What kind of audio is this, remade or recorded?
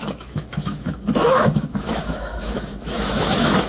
remade